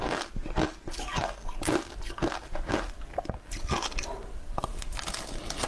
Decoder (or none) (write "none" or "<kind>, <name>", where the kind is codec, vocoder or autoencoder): none